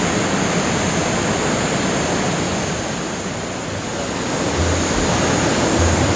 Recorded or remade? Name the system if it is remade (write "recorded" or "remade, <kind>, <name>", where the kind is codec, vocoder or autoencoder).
recorded